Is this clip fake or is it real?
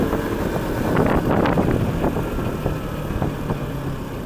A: real